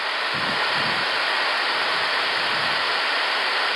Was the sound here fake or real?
real